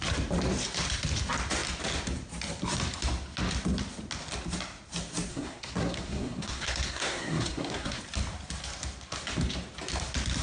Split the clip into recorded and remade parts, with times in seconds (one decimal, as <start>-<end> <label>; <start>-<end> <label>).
0.0-5.3 recorded; 5.3-8.0 remade; 8.0-10.4 recorded